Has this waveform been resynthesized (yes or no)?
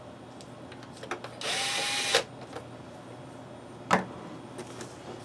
no